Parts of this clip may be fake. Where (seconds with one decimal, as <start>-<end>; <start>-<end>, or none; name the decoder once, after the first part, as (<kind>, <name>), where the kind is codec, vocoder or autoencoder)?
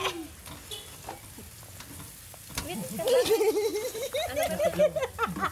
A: 3.7-4.8 (vocoder, BigVGAN v2)